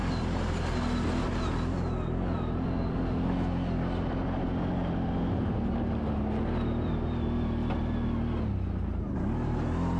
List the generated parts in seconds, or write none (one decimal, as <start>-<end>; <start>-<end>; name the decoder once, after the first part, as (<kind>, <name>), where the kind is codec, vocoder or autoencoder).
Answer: none

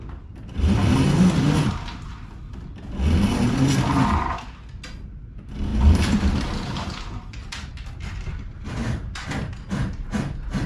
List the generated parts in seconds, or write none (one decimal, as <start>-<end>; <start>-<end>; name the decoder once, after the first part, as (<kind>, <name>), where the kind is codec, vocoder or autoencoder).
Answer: 5.7-7.7 (vocoder, BigVGAN v2); 8.8-9.5

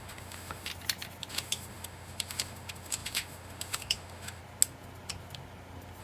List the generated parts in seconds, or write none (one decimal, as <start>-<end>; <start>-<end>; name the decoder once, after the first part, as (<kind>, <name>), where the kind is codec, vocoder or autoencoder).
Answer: 0.0-0.7 (autoencoder, DAC-VAE); 1.3-4.4

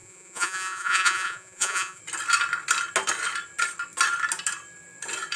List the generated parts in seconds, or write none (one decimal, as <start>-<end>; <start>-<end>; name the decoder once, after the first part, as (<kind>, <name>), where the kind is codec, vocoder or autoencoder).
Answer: 0.0-2.0 (vocoder, Vocos)

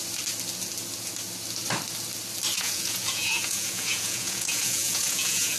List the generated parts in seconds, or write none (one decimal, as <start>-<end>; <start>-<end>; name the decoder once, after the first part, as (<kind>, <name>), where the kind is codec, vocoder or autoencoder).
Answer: 2.6-5.6 (vocoder, Vocos)

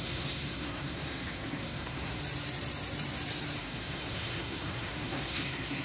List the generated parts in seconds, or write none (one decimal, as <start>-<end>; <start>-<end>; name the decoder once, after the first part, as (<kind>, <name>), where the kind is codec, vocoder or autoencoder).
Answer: 0.0-2.2 (codec, SNAC); 3.6-5.8

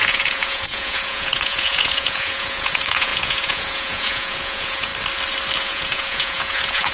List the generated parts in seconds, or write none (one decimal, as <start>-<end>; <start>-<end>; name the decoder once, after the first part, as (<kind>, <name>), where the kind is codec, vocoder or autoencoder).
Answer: 0.0-4.9 (vocoder, Vocos); 5.6-6.9

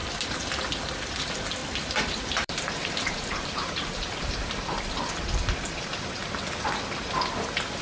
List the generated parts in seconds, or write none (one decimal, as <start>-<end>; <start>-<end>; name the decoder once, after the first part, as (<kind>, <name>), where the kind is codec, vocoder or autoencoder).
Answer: 0.0-0.5 (vocoder, BigVGAN v2); 1.6-4.8